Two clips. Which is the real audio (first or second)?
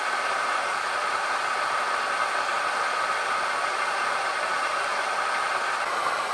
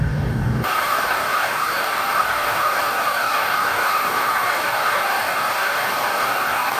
first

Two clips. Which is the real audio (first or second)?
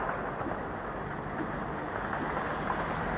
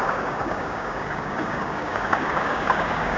first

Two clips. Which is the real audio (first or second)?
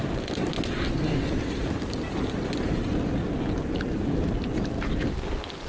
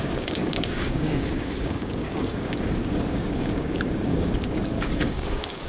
first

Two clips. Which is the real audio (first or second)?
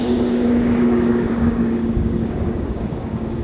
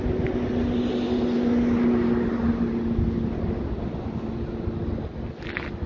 second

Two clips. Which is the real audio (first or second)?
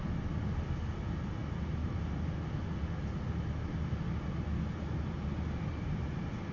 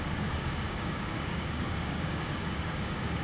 first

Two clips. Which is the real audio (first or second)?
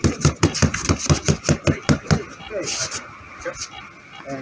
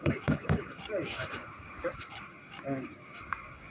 first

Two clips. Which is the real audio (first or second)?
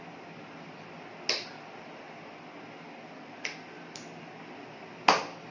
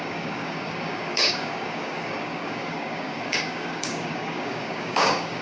first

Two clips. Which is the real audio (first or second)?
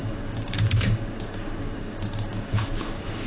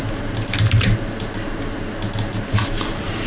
second